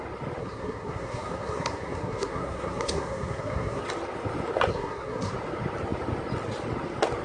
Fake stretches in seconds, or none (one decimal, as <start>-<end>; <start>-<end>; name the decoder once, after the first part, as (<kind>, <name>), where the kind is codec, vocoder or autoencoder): 0.4-3.8 (codec, SNAC); 4.7-5.3